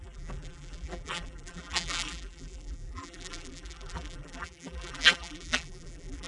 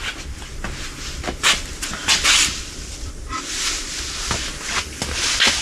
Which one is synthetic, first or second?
first